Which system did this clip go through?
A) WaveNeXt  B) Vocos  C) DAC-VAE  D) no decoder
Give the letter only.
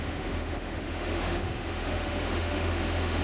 C